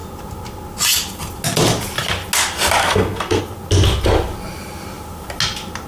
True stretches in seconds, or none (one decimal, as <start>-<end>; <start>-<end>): 0.0-2.8; 3.4-5.9